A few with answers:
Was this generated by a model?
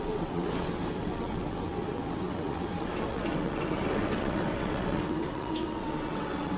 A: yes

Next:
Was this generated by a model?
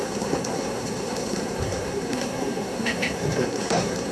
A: yes